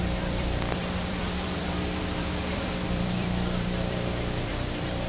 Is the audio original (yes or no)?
no